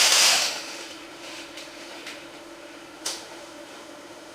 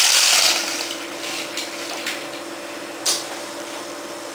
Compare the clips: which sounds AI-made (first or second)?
first